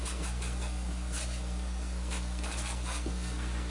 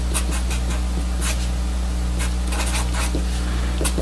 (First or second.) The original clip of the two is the second